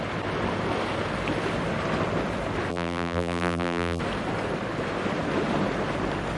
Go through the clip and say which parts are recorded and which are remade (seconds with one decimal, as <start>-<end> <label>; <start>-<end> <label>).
0.0-2.7 recorded; 2.7-4.0 remade; 4.0-6.4 recorded